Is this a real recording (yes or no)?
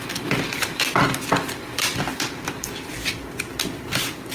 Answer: yes